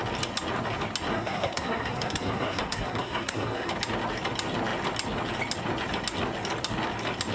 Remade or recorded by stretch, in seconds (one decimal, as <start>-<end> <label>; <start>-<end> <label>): 0.0-1.1 recorded; 1.1-3.7 remade; 3.7-7.3 recorded

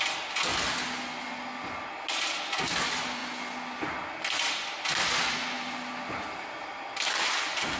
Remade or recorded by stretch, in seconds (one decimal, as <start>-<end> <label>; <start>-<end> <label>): 0.0-7.8 recorded

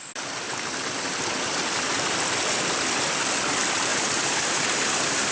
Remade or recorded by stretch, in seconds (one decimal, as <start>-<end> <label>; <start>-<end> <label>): 0.0-3.9 recorded; 3.9-5.3 remade

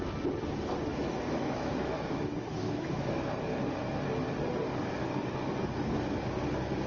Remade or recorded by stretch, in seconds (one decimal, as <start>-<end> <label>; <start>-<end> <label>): 0.0-0.9 recorded; 0.9-3.3 remade; 3.3-6.9 recorded